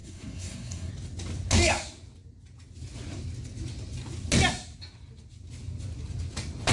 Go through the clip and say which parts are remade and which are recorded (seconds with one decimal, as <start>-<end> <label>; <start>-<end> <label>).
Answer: 0.0-0.9 remade; 0.9-6.7 recorded